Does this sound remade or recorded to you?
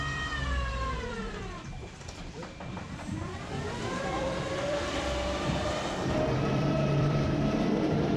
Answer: remade